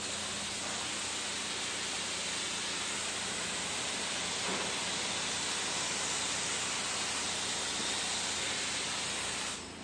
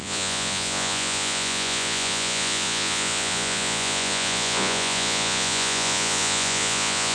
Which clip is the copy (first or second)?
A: second